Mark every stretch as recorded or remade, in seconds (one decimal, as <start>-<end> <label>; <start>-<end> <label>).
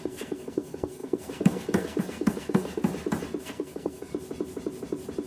0.0-2.8 remade; 2.8-3.4 recorded; 3.4-4.1 remade; 4.1-5.3 recorded